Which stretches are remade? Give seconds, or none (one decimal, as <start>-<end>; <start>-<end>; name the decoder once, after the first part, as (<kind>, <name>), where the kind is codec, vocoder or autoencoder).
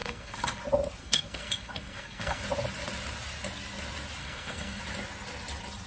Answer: 0.0-0.6 (codec, SNAC); 1.0-2.4; 4.2-4.8